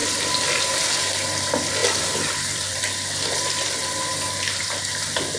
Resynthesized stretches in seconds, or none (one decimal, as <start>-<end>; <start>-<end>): 1.8-2.8